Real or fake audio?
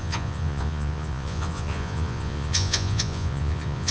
fake